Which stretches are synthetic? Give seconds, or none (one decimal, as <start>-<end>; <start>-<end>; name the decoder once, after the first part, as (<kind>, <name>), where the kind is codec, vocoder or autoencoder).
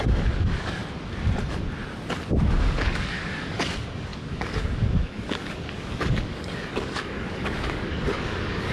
0.0-0.8 (codec, DAC); 2.5-8.7